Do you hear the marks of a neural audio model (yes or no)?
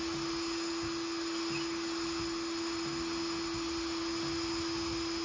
no